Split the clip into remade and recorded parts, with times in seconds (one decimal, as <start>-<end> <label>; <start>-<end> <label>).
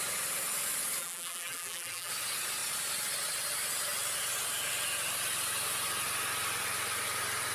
0.0-1.0 recorded; 1.0-2.1 remade; 2.1-7.5 recorded